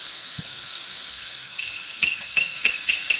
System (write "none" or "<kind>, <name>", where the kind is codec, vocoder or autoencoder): codec, SNAC